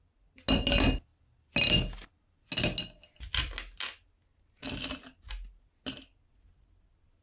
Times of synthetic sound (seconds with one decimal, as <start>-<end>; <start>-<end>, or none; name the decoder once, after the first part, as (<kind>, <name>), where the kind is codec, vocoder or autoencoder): 4.3-5.6 (vocoder, BigVGAN v2)

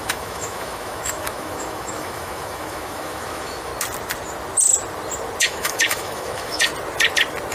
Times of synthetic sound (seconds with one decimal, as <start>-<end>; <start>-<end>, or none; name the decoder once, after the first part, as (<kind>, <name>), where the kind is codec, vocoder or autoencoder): 0.0-3.7 (autoencoder, DAC-VAE); 5.4-6.7

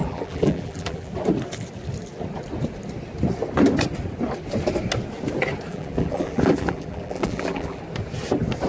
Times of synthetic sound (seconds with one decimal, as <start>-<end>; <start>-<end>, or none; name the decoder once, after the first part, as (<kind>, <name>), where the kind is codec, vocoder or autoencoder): 0.0-1.1 (vocoder, BigVGAN v2); 5.7-7.8

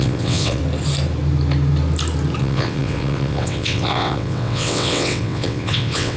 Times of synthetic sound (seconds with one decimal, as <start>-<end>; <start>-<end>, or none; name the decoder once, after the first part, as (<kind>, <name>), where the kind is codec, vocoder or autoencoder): 0.0-0.6 (vocoder, WaveNeXt); 2.4-6.2

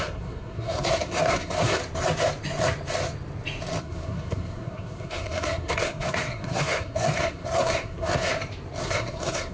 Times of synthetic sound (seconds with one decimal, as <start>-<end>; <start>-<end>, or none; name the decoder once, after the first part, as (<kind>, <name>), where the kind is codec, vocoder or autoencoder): 0.0-1.8 (codec, SNAC); 3.8-8.3; 8.8-9.5

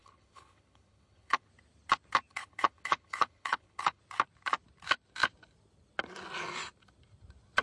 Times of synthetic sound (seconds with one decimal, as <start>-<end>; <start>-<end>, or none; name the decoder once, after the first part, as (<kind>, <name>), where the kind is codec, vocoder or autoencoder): 0.0-1.5 (codec, HILCodec); 2.3-4.0

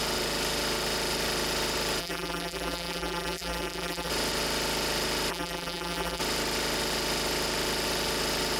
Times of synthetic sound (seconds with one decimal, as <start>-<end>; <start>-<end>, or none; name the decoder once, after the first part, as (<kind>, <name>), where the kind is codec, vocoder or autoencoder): 2.0-4.1 (vocoder, BigVGAN v2); 5.3-6.2

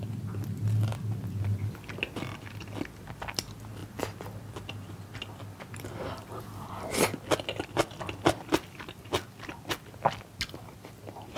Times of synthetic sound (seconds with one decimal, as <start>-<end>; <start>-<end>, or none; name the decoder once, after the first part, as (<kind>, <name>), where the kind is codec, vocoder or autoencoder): none